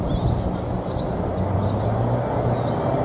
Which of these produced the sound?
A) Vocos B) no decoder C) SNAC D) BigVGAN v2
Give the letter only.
B